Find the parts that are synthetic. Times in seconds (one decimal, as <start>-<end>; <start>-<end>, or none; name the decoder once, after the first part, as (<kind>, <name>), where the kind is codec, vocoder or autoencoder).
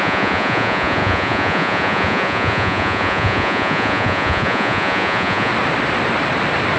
0.0-5.5 (vocoder, Vocos)